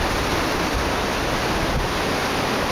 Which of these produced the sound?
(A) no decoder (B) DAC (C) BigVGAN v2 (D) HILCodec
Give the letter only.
A